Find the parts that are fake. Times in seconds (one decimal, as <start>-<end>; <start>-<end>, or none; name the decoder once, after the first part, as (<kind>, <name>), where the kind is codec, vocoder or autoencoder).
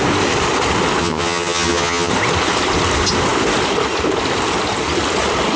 1.0-2.1 (vocoder, HiFi-GAN)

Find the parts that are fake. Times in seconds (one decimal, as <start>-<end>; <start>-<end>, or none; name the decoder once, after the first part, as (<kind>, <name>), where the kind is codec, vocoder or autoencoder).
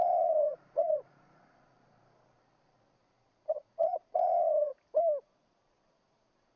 0.0-4.7 (vocoder, Vocos); 5.2-6.6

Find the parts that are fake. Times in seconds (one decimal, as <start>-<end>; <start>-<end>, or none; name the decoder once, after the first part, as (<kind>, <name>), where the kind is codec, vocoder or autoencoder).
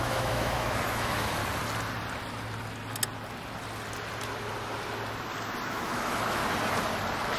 0.0-1.4 (autoencoder, DAC-VAE); 5.7-6.4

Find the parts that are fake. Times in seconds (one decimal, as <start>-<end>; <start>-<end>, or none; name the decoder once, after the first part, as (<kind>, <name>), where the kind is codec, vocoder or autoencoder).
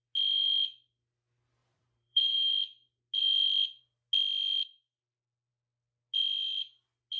1.6-2.5 (vocoder, BigVGAN v2)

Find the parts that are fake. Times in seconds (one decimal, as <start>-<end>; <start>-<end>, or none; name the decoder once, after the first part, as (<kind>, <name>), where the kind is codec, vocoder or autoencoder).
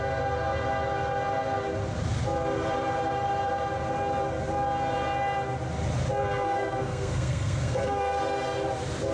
6.2-8.2 (codec, SNAC)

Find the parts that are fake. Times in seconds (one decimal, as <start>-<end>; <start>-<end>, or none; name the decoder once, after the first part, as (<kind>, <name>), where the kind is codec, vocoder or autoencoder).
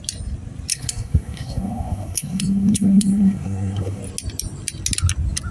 0.7-4.0 (codec, SNAC)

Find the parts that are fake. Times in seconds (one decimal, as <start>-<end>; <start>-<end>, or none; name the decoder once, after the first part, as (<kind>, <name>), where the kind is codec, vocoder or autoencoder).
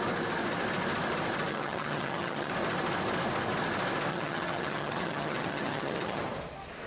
1.5-2.5 (vocoder, HiFi-GAN); 4.1-6.2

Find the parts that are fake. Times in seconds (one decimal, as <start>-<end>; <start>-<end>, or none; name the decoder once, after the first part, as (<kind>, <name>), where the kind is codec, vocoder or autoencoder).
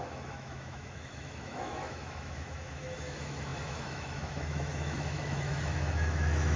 0.0-6.6 (autoencoder, DAC-VAE)